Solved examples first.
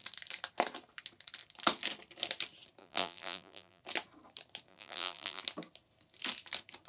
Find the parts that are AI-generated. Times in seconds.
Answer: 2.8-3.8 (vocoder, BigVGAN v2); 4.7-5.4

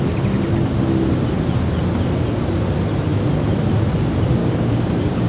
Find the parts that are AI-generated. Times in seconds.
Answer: 4.4-5.3 (codec, DAC)

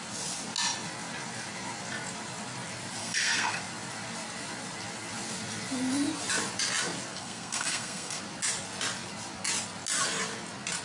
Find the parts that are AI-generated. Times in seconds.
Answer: 3.0-3.6 (codec, SNAC); 7.1-8.2

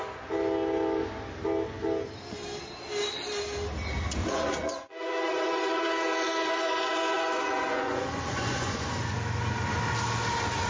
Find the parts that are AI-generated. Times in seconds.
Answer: 4.2-8.9 (vocoder, Vocos)

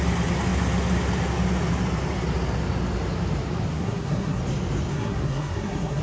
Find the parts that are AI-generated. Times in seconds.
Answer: 3.7-4.4 (codec, SNAC); 4.9-6.0

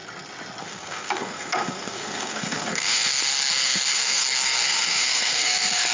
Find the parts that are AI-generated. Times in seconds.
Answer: 0.6-5.9 (codec, SNAC)

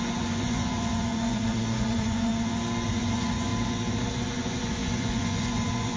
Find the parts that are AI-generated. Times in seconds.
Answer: 0.0-2.3 (vocoder, Vocos); 2.9-3.5; 4.0-6.0